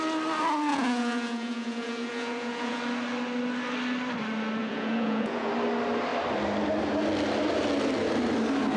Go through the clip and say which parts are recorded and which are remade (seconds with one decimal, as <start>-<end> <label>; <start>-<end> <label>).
0.0-0.7 recorded; 0.7-2.8 remade; 2.8-4.6 recorded; 4.6-5.5 remade; 5.5-8.8 recorded